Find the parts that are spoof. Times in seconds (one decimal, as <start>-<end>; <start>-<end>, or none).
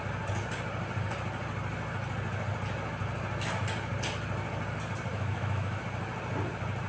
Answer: 5.1-5.8